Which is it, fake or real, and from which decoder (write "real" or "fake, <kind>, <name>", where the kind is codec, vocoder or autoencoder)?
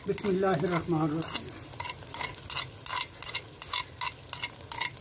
real